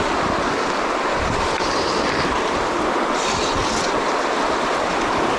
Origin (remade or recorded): recorded